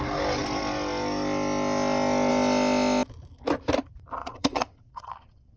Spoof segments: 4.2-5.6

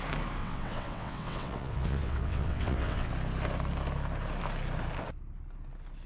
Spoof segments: 0.4-3.1

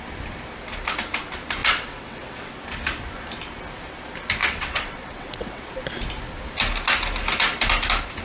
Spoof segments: 1.6-2.5; 4.4-5.6

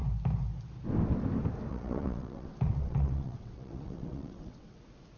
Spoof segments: 1.7-4.8

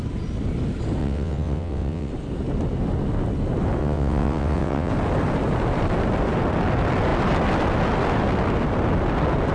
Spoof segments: 1.0-2.1; 3.8-4.9

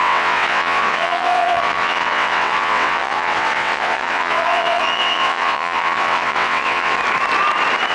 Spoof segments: 0.0-7.0